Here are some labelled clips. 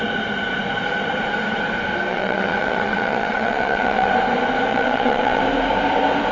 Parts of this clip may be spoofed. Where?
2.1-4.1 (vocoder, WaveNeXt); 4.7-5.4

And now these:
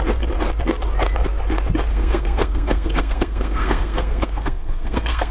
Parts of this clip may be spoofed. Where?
1.9-5.3 (codec, SNAC)

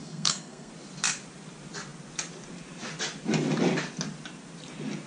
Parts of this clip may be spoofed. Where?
0.0-0.7 (codec, SNAC)

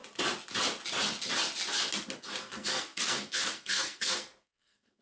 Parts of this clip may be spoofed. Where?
2.4-5.0 (codec, SNAC)

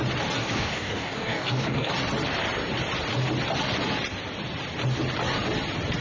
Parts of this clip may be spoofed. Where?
0.4-1.9 (codec, DAC)

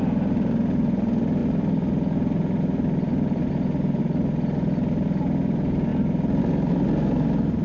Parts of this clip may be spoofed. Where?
none

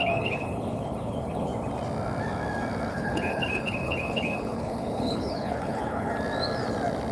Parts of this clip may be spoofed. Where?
0.0-1.5 (codec, HILCodec); 2.9-6.1